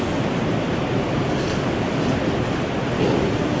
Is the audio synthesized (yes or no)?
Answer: no